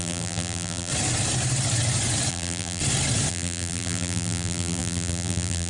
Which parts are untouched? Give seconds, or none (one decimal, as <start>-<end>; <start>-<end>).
0.9-2.3; 2.8-3.3